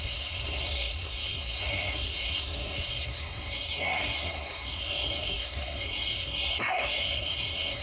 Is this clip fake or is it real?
fake